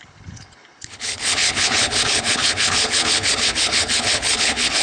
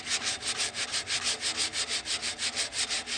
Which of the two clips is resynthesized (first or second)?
first